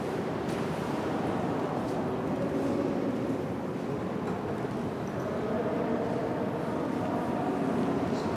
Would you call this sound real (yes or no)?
yes